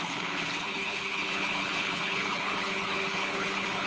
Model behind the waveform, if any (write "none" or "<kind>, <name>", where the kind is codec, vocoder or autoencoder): codec, HILCodec